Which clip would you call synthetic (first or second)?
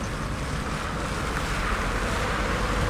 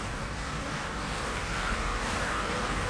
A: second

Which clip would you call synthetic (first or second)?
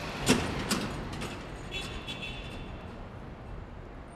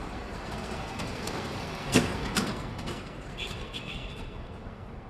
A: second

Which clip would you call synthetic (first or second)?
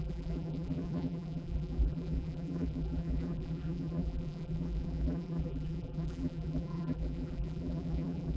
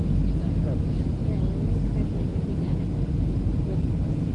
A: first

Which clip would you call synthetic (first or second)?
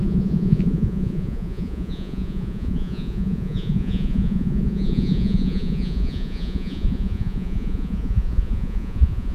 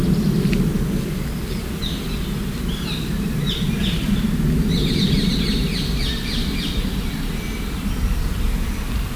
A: first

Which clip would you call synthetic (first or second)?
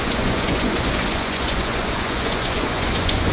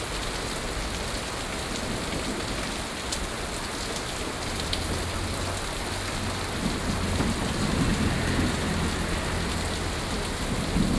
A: first